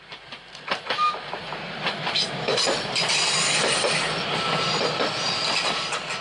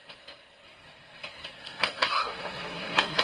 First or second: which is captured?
first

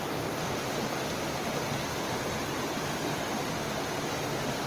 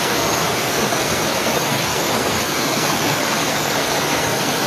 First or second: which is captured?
first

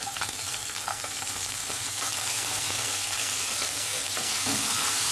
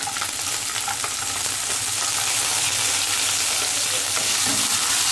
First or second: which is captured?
second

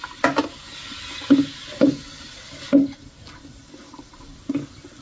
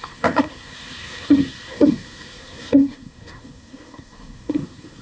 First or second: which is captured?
first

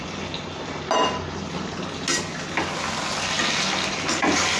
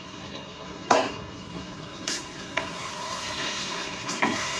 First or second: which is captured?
first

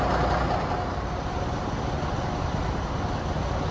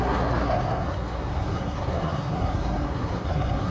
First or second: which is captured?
first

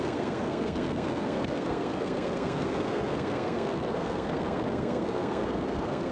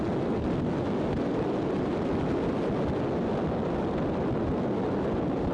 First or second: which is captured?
second